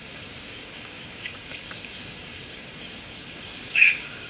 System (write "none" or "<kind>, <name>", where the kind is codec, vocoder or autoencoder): codec, DAC